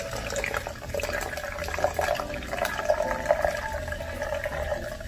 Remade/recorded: recorded